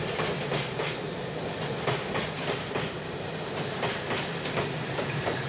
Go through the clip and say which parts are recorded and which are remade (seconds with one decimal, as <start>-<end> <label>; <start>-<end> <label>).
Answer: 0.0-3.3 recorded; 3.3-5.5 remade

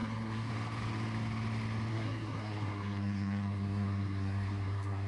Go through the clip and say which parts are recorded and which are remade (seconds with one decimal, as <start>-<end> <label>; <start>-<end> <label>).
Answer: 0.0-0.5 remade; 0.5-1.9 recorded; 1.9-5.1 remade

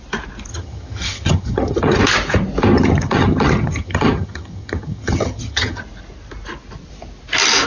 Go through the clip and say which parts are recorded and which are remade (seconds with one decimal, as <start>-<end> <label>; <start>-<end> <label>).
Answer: 0.0-0.5 recorded; 0.5-2.0 remade; 2.0-2.7 recorded; 2.7-5.8 remade; 5.8-7.7 recorded